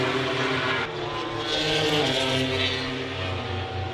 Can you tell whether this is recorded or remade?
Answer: recorded